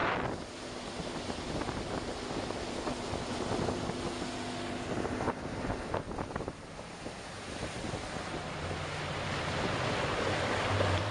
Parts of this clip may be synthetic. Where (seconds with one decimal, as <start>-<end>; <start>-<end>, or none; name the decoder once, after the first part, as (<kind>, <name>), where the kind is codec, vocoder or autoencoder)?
none